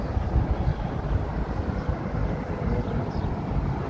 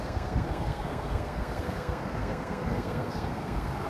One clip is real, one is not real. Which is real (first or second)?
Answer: first